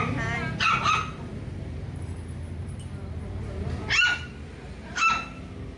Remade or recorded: recorded